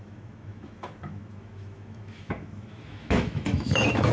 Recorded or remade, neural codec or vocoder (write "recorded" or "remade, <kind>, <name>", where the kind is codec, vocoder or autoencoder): remade, autoencoder, DAC-VAE